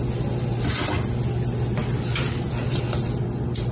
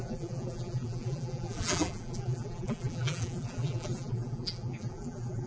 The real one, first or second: first